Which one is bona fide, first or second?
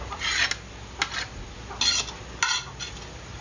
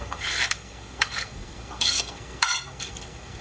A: first